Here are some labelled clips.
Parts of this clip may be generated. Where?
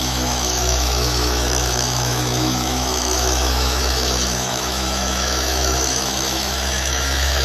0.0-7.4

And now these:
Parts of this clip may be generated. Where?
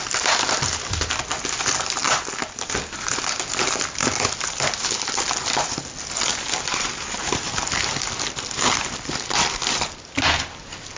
none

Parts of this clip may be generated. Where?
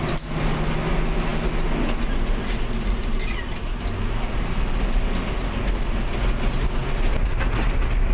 none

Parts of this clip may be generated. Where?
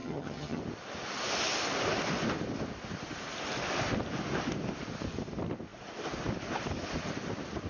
0.0-0.6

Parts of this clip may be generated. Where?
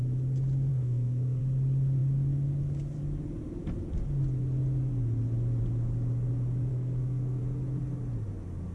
0.7-1.4; 6.7-7.4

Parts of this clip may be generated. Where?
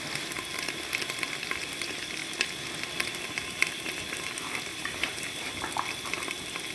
4.7-5.5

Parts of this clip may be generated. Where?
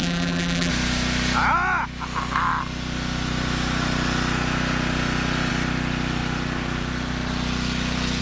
0.0-0.7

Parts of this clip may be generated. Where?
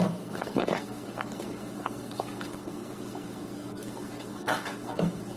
0.0-5.4